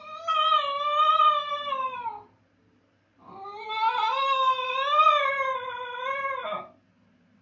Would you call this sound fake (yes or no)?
no